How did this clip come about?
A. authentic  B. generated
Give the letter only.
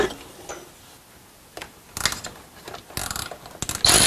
A